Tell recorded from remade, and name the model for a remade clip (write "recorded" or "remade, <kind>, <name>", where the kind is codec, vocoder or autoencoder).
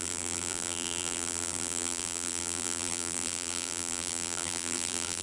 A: remade, vocoder, BigVGAN v2